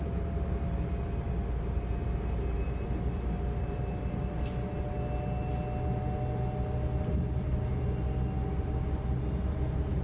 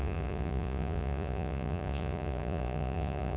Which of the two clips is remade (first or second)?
second